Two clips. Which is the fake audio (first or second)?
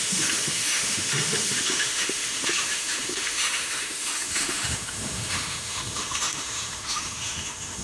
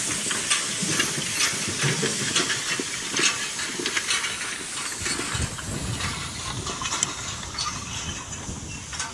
first